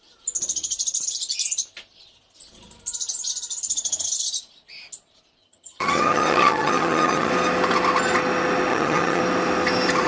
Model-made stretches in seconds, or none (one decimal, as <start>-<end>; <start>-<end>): 5.4-7.3; 8.7-9.2